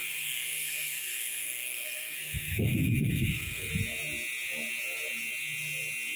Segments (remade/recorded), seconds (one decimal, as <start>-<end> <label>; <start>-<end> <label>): 0.0-3.7 remade; 3.7-6.2 recorded